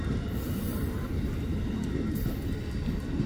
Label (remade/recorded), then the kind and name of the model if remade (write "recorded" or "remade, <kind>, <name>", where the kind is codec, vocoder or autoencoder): recorded